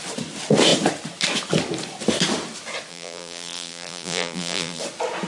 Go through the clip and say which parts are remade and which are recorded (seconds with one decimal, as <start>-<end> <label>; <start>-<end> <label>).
0.0-2.9 recorded; 2.9-4.8 remade; 4.8-5.3 recorded